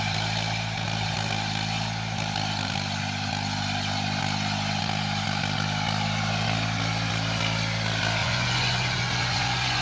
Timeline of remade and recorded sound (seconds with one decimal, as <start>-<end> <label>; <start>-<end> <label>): 0.0-8.2 recorded; 8.2-9.8 remade